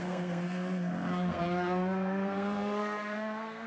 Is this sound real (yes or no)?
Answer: no